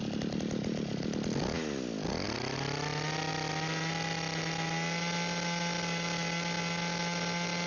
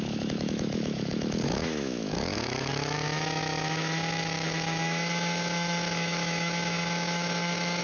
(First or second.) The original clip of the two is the first